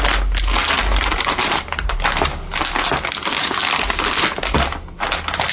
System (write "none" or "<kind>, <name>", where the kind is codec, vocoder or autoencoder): none